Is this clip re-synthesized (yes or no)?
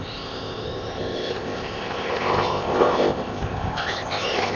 yes